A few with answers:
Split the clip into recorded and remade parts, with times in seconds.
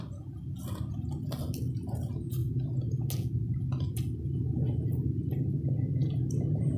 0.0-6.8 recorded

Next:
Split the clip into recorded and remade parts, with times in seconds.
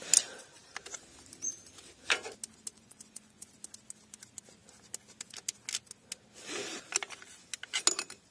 0.0-2.7 recorded; 2.7-3.5 remade; 3.5-8.3 recorded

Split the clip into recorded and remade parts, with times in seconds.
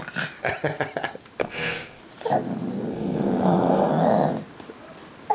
0.0-1.4 recorded; 1.4-2.0 remade; 2.0-2.9 recorded; 2.9-3.9 remade; 3.9-5.3 recorded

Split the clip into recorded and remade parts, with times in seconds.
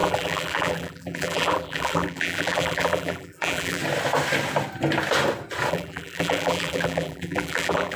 0.0-3.8 remade; 3.8-5.7 recorded; 5.7-8.0 remade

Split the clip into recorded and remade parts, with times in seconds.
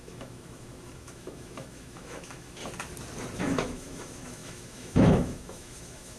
0.0-2.6 remade; 2.6-3.4 recorded; 3.4-6.2 remade